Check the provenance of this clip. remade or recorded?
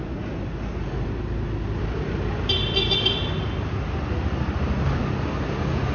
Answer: recorded